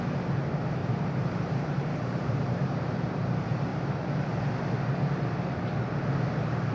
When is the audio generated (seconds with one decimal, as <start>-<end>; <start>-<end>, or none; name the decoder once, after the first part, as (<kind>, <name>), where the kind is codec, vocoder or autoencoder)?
0.8-3.3 (vocoder, BigVGAN v2); 3.7-4.4